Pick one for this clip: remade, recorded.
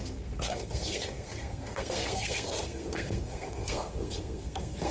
remade